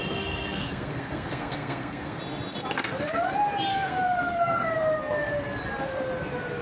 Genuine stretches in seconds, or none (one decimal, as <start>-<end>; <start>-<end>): 2.2-3.7; 4.7-6.6